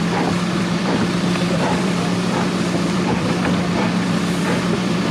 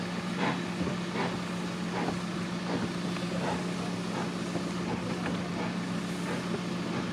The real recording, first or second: second